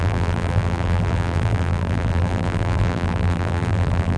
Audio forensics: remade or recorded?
remade